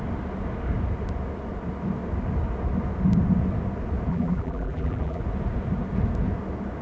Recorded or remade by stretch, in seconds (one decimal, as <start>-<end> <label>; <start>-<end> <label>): 0.0-4.1 recorded; 4.1-5.2 remade; 5.2-6.8 recorded